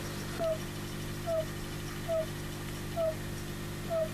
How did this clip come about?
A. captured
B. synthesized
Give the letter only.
A